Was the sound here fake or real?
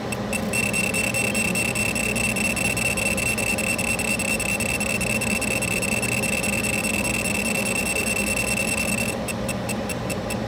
real